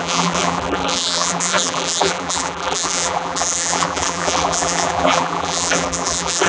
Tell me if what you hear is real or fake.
fake